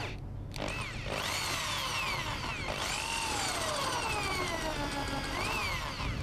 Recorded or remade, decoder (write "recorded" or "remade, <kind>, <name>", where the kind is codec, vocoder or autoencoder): recorded